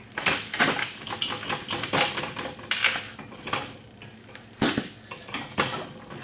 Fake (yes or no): no